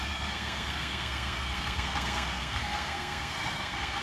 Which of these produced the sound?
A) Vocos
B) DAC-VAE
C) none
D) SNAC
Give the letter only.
D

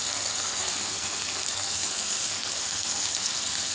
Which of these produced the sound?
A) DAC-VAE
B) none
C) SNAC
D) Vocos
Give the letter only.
C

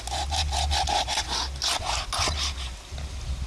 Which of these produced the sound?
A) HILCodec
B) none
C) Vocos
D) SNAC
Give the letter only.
B